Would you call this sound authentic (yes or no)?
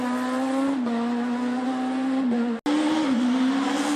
yes